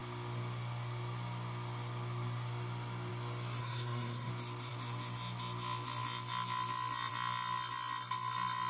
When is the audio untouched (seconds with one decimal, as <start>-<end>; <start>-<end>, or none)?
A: 0.0-3.6; 4.3-8.7